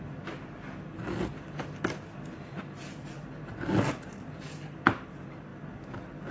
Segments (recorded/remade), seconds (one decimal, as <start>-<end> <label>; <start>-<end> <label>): 0.0-6.3 recorded